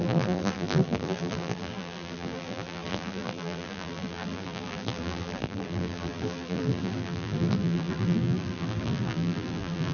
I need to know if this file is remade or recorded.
remade